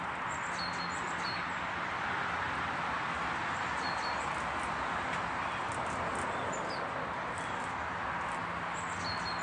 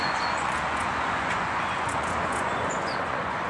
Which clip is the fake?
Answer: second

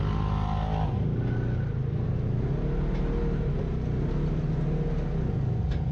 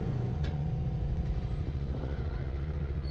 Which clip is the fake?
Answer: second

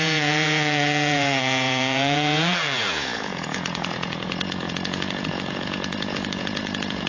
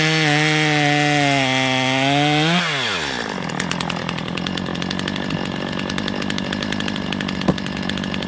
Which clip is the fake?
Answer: first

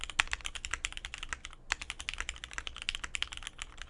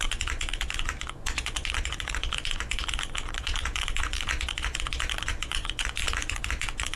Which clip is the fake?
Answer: second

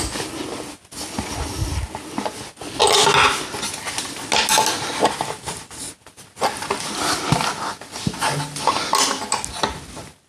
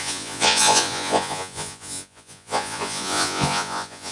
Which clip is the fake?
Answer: second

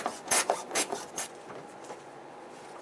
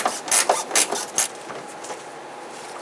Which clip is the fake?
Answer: first